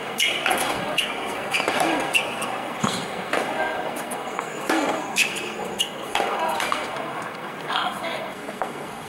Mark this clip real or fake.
fake